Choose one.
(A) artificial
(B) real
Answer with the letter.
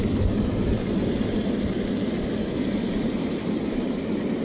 A